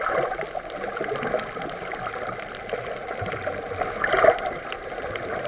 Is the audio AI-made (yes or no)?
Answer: no